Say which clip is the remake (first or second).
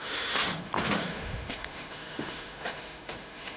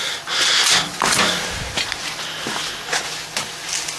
first